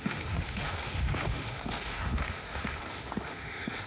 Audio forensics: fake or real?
fake